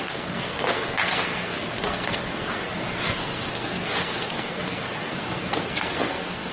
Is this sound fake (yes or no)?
yes